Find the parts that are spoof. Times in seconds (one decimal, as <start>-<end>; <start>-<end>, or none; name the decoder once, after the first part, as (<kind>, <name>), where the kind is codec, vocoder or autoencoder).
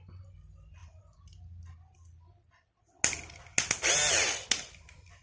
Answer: none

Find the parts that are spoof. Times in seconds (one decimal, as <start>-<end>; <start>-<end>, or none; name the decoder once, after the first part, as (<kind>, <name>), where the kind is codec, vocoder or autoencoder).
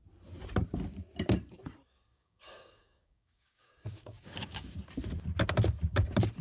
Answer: 2.1-4.7 (codec, DAC)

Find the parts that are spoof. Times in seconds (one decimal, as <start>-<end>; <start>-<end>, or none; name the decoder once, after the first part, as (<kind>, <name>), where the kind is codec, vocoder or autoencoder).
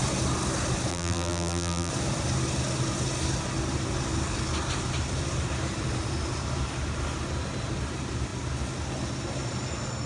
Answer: 0.9-1.9 (vocoder, BigVGAN v2)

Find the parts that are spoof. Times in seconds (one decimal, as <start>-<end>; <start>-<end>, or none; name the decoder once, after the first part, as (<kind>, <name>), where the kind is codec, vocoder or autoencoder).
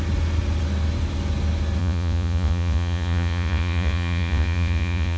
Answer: 1.8-5.2 (vocoder, Vocos)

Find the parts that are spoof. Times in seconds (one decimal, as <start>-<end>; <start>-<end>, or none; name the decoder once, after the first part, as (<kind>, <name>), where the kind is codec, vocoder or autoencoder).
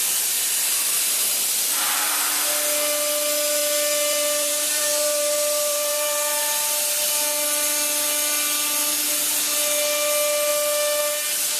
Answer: 3.6-6.4 (vocoder, BigVGAN v2)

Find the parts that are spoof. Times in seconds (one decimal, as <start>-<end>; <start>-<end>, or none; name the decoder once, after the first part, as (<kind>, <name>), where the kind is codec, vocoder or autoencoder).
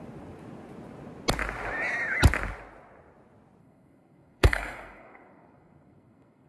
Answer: 3.6-6.5 (codec, SNAC)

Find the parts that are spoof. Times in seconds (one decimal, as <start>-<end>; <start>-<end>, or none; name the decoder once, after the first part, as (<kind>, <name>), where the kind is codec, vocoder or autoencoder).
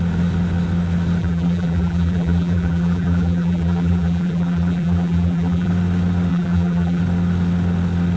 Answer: 1.2-5.7 (vocoder, BigVGAN v2); 6.3-7.0